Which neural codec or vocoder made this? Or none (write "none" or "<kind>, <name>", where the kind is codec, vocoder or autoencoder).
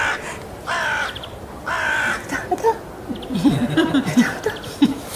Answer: vocoder, BigVGAN v2